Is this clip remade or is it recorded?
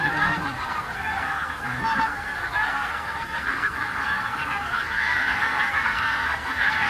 remade